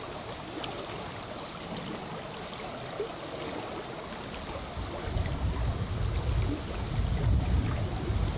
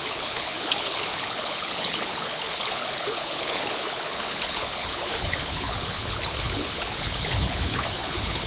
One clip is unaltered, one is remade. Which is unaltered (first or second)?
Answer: first